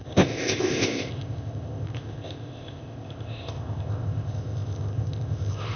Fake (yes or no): yes